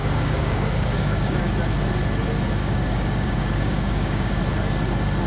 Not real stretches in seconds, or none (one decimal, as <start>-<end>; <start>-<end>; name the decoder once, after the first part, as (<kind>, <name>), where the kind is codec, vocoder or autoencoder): 0.0-1.4 (codec, DAC); 2.6-4.4